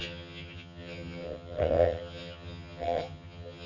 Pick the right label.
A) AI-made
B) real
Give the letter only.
A